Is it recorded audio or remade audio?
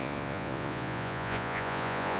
remade